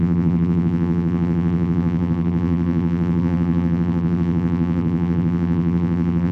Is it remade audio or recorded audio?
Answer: remade